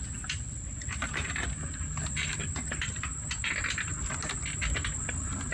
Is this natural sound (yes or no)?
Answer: yes